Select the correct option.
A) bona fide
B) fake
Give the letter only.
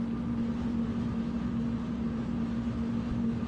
A